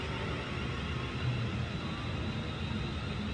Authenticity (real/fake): real